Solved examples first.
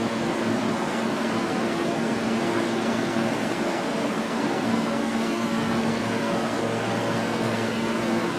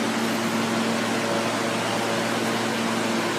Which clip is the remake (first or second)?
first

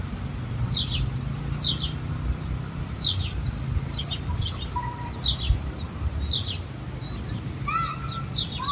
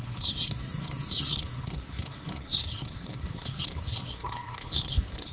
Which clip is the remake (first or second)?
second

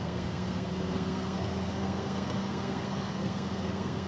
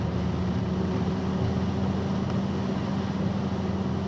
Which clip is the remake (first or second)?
first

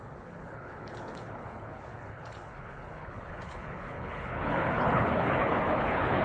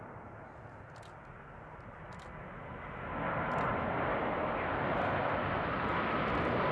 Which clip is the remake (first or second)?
first